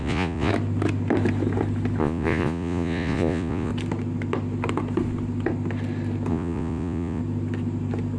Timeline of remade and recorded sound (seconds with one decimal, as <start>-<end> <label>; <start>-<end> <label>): 0.0-0.5 remade; 0.5-2.0 recorded; 2.0-3.7 remade; 3.7-6.3 recorded; 6.3-7.2 remade; 7.2-8.2 recorded